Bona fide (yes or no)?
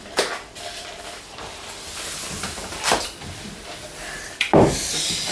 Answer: no